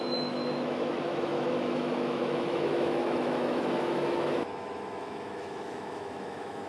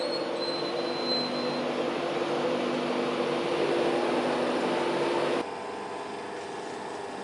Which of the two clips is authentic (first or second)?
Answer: second